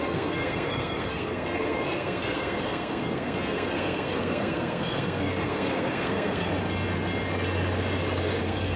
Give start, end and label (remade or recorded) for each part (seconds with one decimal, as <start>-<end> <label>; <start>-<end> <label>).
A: 0.0-6.5 remade; 6.5-8.4 recorded; 8.4-8.8 remade